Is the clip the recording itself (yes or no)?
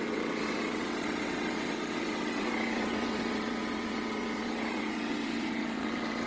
no